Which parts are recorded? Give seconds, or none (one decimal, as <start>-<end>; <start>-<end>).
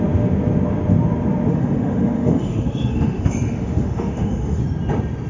0.0-1.5; 4.6-5.3